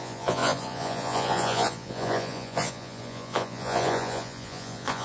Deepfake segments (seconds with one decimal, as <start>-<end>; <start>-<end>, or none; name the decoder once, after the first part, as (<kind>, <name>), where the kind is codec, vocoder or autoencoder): 0.0-5.0 (vocoder, Vocos)